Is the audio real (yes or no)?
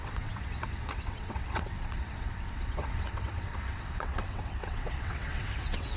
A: no